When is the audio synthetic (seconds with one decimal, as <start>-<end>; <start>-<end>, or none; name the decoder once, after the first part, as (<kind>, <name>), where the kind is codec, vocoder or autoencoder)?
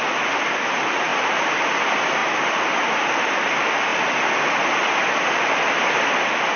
none